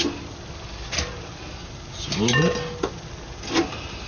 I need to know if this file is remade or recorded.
recorded